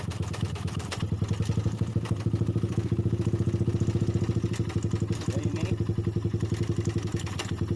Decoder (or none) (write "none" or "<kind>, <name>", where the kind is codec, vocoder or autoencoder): none